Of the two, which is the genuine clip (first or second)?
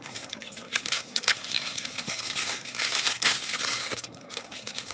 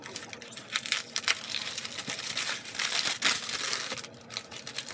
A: second